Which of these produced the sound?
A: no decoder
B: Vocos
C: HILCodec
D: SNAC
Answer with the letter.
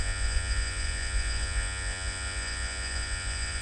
B